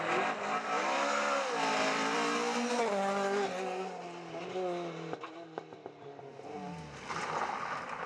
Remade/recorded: recorded